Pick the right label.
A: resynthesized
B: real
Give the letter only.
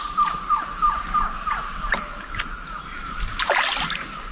A